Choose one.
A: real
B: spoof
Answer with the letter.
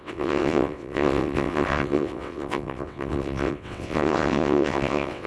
B